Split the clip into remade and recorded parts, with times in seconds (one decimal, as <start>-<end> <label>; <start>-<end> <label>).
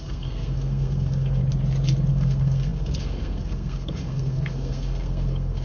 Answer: 0.0-1.4 remade; 1.4-2.1 recorded; 2.1-5.6 remade